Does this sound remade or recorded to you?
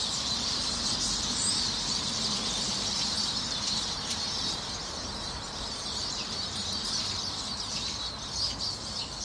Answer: remade